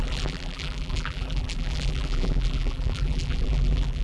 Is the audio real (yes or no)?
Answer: no